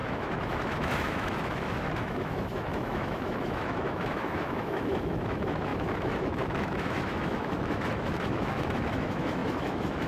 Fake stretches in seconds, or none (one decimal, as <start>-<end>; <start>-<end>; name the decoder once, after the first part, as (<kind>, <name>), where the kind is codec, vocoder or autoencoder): 0.0-10.1 (autoencoder, DAC-VAE)

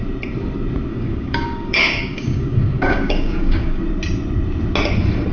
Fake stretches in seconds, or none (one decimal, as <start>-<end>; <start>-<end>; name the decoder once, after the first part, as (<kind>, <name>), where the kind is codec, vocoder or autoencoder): 0.9-3.8 (codec, DAC)

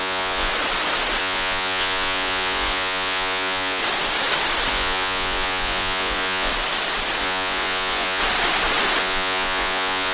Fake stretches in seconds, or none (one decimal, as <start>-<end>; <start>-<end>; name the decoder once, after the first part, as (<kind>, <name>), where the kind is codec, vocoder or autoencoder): 0.0-0.5 (vocoder, Vocos); 1.2-3.8; 4.7-6.5; 7.2-8.2; 9.0-10.1

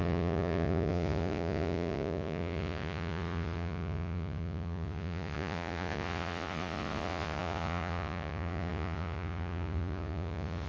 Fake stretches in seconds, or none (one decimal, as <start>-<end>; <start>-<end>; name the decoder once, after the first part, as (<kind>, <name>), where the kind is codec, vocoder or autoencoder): 0.0-10.7 (vocoder, Vocos)

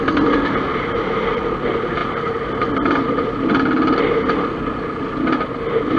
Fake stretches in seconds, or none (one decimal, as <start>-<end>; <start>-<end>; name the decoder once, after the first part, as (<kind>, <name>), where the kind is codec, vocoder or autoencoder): none